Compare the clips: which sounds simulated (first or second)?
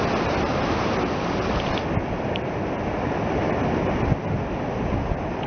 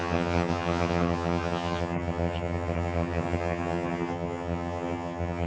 second